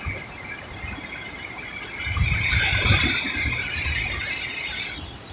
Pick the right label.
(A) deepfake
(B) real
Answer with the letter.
A